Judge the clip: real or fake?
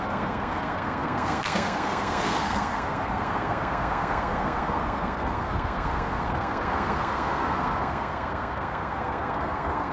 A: fake